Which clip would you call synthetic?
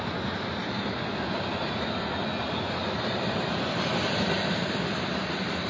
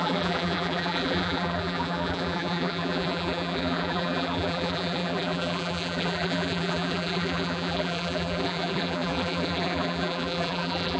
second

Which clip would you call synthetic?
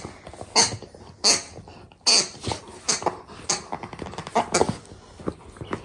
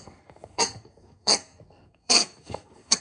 second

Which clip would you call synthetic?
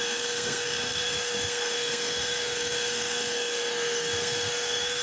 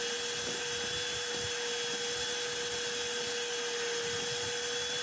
first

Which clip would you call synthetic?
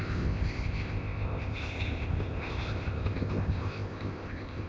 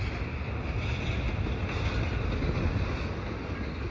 first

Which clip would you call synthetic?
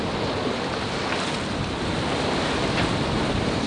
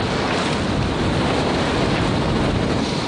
first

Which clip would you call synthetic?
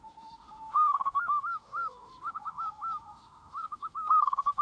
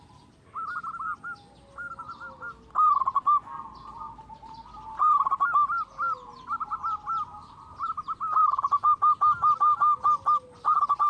first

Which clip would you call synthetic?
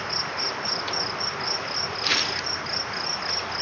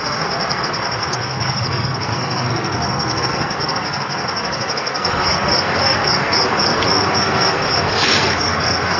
second